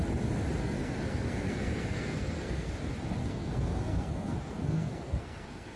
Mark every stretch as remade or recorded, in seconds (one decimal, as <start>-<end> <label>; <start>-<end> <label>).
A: 0.0-0.6 recorded; 0.6-2.7 remade; 2.7-3.2 recorded; 3.2-5.8 remade